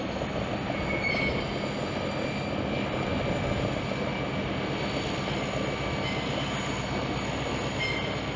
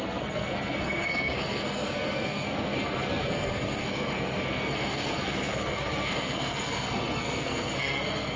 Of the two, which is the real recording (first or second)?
first